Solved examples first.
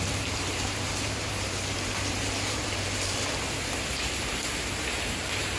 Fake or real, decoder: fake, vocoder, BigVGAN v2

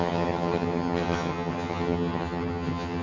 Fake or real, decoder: fake, vocoder, HiFi-GAN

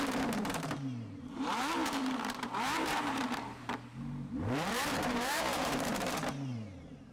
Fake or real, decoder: fake, vocoder, BigVGAN v2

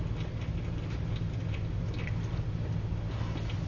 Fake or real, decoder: real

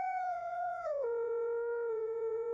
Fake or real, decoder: fake, vocoder, Vocos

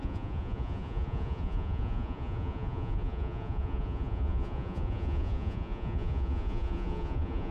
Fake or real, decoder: fake, vocoder, Vocos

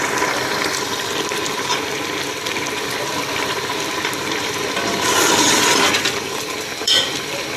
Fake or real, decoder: fake, vocoder, BigVGAN v2